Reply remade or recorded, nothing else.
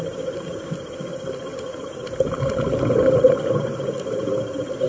recorded